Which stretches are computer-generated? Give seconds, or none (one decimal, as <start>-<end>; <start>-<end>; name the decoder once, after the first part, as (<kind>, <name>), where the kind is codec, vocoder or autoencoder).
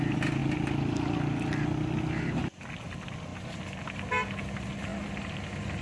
none